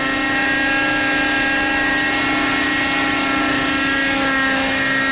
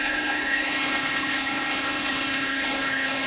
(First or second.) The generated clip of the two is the second